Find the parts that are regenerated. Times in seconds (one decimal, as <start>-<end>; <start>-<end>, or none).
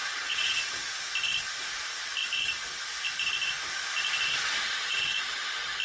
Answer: 0.0-0.9